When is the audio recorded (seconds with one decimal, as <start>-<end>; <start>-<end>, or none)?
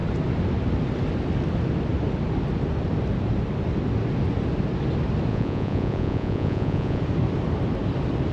0.0-5.3; 7.0-8.3